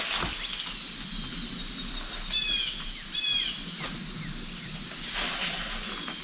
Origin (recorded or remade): recorded